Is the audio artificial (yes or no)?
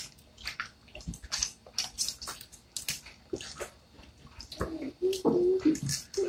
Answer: no